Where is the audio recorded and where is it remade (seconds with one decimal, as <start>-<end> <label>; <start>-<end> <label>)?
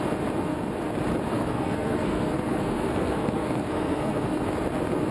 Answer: 0.0-1.3 recorded; 1.3-4.4 remade; 4.4-5.1 recorded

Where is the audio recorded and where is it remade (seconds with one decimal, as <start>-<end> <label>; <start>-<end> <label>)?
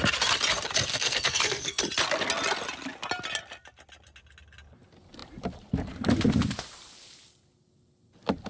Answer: 0.0-0.9 recorded; 0.9-1.8 remade; 1.8-8.5 recorded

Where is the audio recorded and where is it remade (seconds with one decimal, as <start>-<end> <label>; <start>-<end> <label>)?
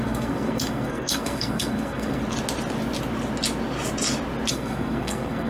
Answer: 0.0-2.2 remade; 2.2-4.5 recorded; 4.5-5.5 remade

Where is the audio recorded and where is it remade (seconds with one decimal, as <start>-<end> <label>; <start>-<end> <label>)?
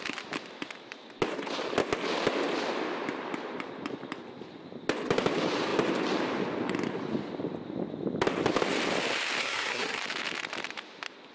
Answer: 0.0-9.4 recorded; 9.4-10.0 remade; 10.0-11.3 recorded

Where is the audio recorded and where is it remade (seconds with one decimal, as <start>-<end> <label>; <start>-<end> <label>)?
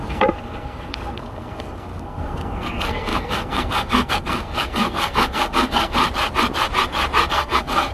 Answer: 0.0-6.0 remade; 6.0-7.3 recorded; 7.3-7.9 remade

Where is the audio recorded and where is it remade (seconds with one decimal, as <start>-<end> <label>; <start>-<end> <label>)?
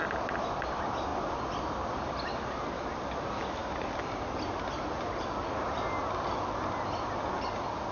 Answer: 0.0-7.9 recorded